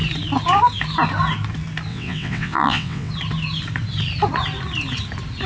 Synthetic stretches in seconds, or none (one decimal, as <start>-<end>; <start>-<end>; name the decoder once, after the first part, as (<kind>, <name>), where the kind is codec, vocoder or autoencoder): 1.9-3.1 (vocoder, WaveNeXt)